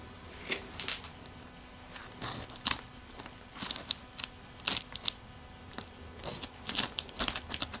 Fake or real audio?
real